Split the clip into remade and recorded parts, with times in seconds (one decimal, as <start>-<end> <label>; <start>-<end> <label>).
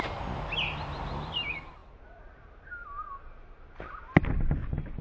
0.0-5.0 recorded